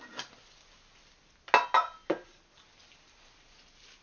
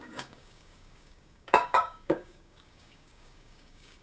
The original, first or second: first